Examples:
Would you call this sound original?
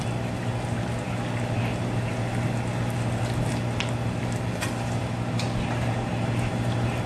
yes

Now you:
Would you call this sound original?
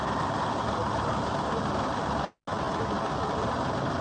yes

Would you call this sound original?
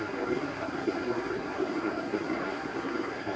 no